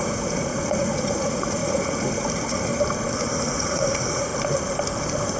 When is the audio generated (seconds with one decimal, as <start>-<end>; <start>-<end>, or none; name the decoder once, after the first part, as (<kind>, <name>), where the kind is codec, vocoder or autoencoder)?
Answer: 0.0-2.7 (vocoder, Vocos); 3.5-4.3